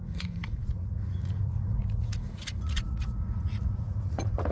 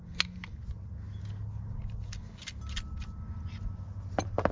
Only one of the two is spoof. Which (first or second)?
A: first